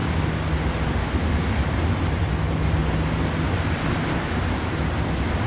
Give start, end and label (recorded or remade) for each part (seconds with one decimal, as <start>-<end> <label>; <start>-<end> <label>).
0.0-1.8 recorded; 1.8-2.8 remade; 2.8-4.9 recorded; 4.9-5.5 remade